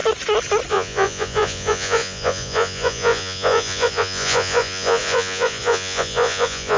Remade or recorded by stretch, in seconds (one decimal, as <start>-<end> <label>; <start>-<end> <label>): 0.0-0.7 recorded; 0.7-6.8 remade